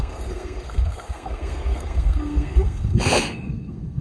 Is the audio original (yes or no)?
no